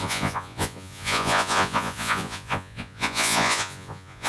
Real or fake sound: fake